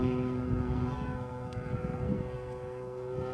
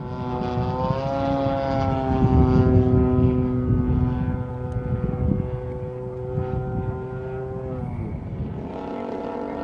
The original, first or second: second